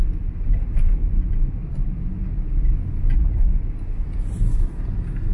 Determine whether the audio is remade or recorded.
recorded